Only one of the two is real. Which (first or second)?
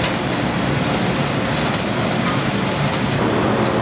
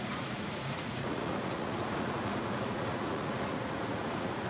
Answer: first